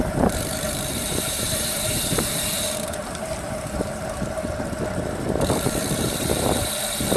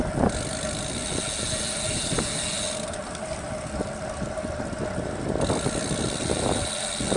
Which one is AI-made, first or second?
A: first